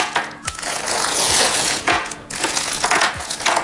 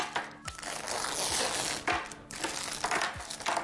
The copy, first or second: first